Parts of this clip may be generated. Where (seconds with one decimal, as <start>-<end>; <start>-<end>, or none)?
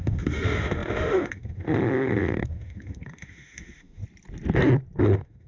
0.0-4.0; 5.0-5.5